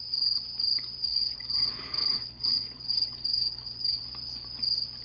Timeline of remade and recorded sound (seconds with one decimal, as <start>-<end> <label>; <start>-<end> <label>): 0.0-1.0 recorded; 1.0-4.0 remade; 4.0-5.0 recorded